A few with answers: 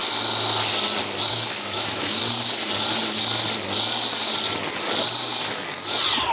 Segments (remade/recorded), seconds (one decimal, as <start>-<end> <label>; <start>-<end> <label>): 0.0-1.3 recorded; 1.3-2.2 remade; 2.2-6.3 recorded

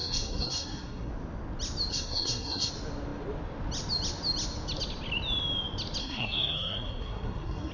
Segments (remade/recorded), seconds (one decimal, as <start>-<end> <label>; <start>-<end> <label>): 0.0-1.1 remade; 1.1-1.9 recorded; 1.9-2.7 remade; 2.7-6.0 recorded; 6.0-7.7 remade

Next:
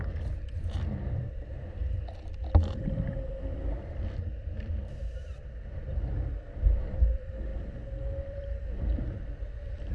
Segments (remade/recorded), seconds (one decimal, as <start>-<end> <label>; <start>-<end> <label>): 0.0-7.5 remade; 7.5-8.2 recorded; 8.2-9.9 remade

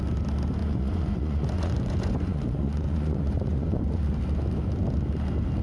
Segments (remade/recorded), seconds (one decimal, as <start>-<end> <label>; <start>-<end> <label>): 0.0-0.6 recorded; 0.6-4.0 remade; 4.0-5.6 recorded

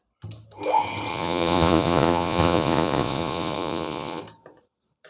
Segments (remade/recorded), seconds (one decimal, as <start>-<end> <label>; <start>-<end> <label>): 0.0-1.1 recorded; 1.1-4.2 remade; 4.2-5.1 recorded

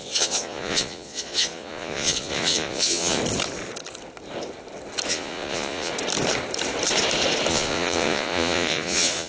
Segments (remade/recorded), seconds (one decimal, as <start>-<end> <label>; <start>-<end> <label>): 0.0-3.2 remade; 3.2-5.1 recorded; 5.1-5.9 remade; 5.9-7.5 recorded; 7.5-9.3 remade

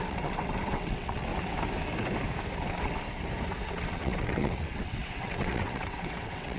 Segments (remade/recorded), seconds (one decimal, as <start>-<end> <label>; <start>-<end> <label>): 0.0-1.3 remade; 1.3-3.7 recorded; 3.7-6.6 remade

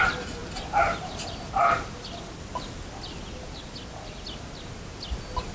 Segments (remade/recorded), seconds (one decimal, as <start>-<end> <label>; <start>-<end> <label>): 0.0-5.5 recorded